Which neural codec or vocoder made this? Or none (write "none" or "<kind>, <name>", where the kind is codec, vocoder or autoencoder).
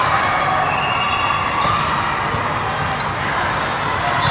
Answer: none